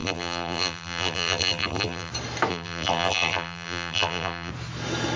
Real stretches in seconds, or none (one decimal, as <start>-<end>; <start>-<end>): 2.1-2.5; 4.5-5.2